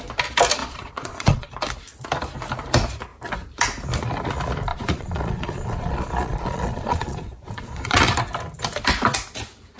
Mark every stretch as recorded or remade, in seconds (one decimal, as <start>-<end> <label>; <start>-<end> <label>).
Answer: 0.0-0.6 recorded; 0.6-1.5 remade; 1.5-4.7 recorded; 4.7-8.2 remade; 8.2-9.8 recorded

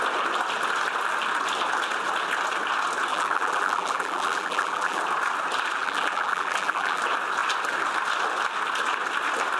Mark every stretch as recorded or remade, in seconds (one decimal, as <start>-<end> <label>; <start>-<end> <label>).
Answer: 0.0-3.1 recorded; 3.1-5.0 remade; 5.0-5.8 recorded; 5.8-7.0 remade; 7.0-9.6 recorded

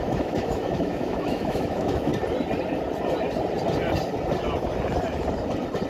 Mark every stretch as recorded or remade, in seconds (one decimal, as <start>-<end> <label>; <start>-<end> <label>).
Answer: 0.0-2.1 remade; 2.1-5.9 recorded